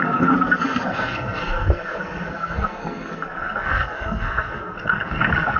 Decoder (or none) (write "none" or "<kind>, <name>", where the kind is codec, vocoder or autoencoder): codec, SNAC